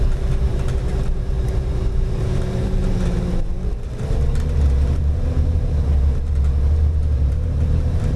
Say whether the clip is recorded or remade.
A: remade